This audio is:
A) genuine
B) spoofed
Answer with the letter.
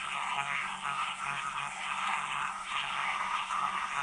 B